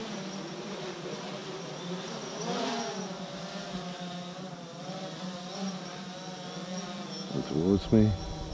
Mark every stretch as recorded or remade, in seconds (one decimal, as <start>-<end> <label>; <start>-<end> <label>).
0.0-1.4 recorded; 1.4-6.0 remade; 6.0-8.5 recorded